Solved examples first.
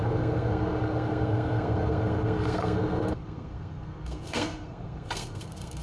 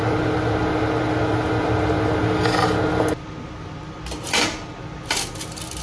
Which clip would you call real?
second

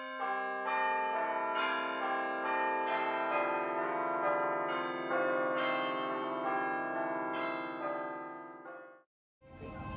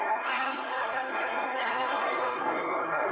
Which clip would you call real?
first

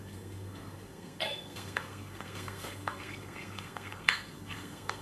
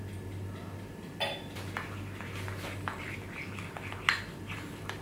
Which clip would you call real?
second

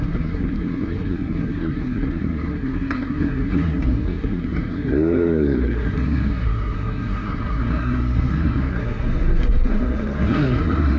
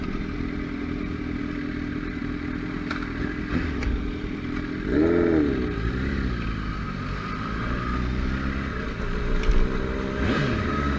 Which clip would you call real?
second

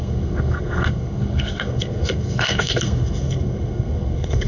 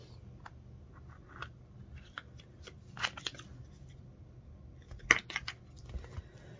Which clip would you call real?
second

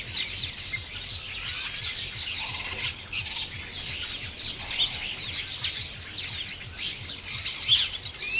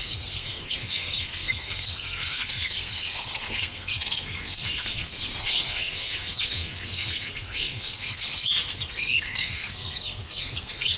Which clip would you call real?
first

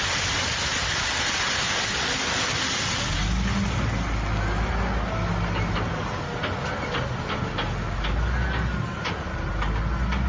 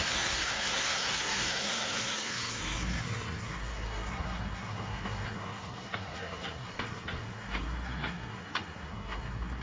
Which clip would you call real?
first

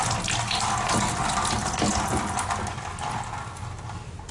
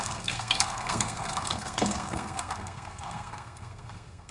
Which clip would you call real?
first